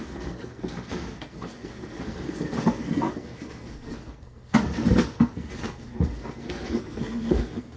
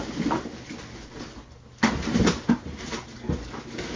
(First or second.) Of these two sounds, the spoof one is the first